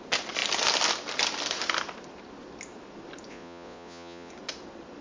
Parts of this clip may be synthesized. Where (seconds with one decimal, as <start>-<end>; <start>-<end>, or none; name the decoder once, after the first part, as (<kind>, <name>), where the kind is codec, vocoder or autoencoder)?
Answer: 3.3-4.3 (vocoder, Vocos)

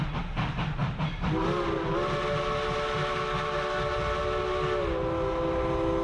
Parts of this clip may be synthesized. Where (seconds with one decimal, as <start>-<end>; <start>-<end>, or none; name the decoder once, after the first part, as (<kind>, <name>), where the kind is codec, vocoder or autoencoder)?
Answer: none

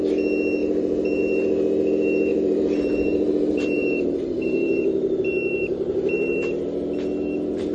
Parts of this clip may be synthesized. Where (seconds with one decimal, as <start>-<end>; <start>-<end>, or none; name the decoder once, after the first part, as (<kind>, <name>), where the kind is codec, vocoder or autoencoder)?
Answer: 0.6-1.2 (vocoder, BigVGAN v2); 2.3-5.2

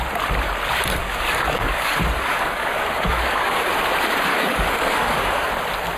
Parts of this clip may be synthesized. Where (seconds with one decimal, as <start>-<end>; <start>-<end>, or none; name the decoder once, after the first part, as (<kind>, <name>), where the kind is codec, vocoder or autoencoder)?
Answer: 1.0-3.7 (codec, DAC); 4.3-5.5

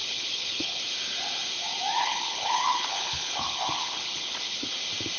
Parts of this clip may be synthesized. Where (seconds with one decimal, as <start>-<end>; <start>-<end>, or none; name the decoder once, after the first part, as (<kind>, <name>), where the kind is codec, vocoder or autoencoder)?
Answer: 0.0-0.8 (codec, HILCodec); 2.0-4.7

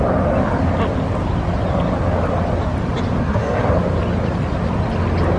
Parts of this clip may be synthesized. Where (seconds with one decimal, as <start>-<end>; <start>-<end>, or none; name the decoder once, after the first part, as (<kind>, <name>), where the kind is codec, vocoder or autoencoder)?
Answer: 3.2-3.7 (codec, SNAC)

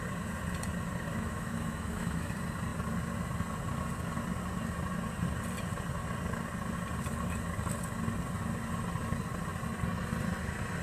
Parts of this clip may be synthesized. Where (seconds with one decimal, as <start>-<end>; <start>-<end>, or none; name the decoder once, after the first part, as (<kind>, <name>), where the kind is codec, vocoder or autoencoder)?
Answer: 1.1-2.3 (autoencoder, DAC-VAE)

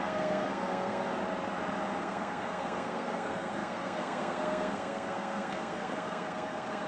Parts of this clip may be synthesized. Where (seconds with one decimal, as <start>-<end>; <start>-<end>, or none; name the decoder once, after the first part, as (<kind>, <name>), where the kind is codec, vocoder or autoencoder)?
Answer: 0.0-1.1 (codec, SNAC); 2.0-6.9